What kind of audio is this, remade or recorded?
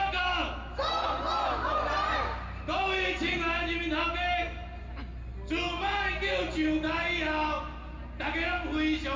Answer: recorded